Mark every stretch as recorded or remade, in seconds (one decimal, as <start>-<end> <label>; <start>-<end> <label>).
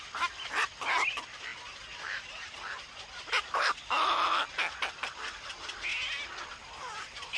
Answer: 0.0-7.4 recorded